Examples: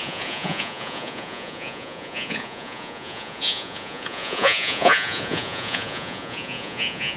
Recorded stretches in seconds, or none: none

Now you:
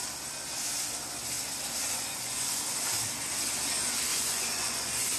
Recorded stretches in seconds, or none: 0.0-1.8; 2.6-4.1

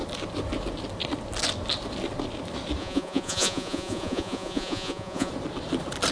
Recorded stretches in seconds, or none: 0.0-2.8; 5.3-6.1

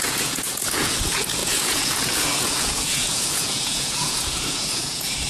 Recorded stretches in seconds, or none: none

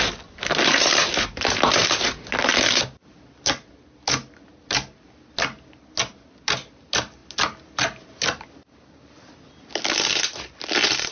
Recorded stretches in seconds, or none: 0.0-11.1

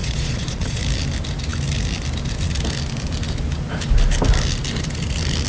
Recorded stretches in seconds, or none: 0.8-5.5